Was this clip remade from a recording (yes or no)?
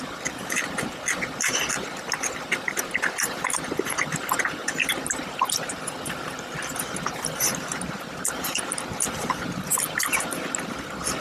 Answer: no